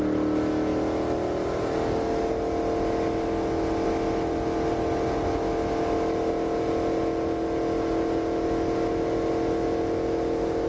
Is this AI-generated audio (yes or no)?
no